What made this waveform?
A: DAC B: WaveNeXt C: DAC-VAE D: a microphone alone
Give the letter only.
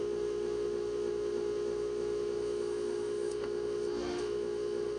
C